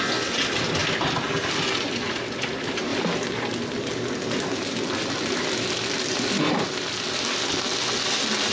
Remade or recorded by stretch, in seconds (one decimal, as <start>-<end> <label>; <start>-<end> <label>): 0.0-0.8 recorded; 0.8-2.0 remade; 2.0-8.5 recorded